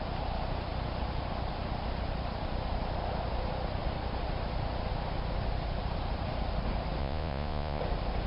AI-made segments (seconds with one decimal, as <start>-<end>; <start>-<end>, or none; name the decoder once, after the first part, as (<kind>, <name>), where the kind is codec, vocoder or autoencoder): 7.0-7.8 (vocoder, Vocos)